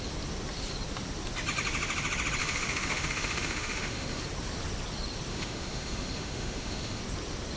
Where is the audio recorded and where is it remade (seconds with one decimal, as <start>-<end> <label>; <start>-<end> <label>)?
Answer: 0.0-2.4 recorded; 2.4-4.2 remade; 4.2-5.3 recorded; 5.3-7.0 remade; 7.0-7.6 recorded